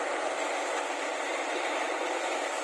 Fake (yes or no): no